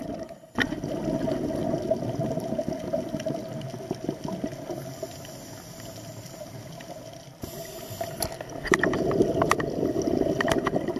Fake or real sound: real